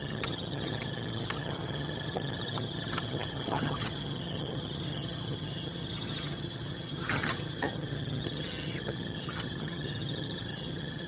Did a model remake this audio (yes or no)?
yes